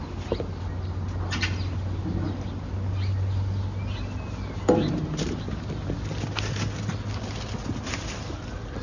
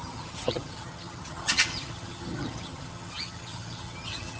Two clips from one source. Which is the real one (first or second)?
first